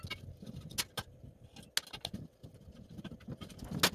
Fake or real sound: real